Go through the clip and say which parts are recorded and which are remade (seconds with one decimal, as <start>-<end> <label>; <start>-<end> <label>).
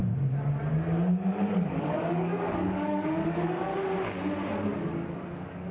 0.0-1.3 recorded; 1.3-3.7 remade; 3.7-4.5 recorded; 4.5-5.7 remade